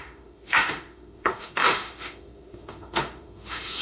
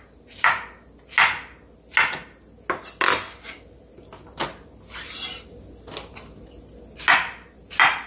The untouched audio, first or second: second